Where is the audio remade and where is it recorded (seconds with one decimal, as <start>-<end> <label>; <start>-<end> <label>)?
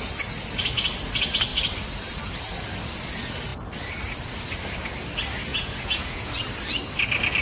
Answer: 0.0-5.5 recorded; 5.5-6.3 remade; 6.3-7.4 recorded